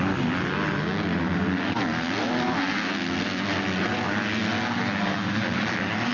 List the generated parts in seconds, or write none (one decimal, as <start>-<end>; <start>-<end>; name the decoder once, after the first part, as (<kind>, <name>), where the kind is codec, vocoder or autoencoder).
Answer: none